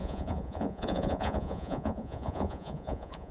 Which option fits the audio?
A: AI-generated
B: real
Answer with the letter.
A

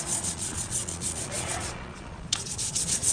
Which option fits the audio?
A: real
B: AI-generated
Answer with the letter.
B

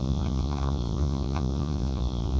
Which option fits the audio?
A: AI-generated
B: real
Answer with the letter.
A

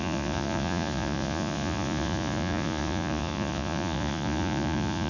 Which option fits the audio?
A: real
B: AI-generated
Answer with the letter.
B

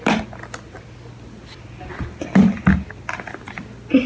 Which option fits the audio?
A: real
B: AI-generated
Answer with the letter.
A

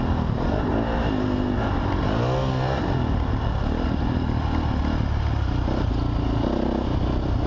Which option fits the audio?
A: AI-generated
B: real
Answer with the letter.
B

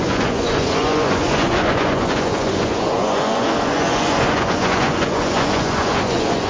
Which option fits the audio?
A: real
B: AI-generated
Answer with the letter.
B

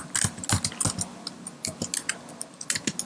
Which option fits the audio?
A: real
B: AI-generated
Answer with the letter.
A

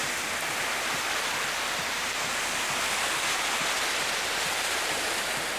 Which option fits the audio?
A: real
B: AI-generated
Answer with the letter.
A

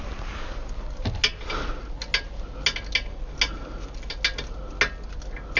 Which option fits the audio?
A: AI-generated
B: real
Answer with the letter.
B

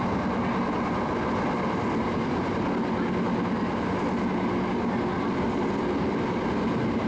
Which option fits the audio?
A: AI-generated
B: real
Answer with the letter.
B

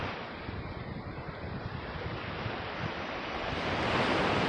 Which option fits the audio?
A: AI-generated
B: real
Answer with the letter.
B